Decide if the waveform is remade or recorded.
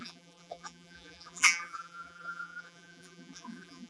remade